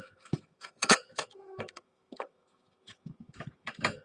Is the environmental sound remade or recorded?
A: remade